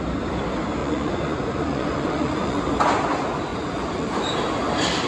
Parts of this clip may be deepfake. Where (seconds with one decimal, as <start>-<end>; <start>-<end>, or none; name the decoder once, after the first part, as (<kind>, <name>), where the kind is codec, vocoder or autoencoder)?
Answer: 0.8-2.6 (vocoder, Vocos); 3.5-4.1